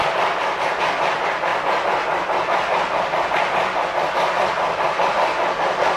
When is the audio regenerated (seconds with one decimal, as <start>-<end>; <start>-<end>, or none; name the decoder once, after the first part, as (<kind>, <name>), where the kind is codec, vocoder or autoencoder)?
none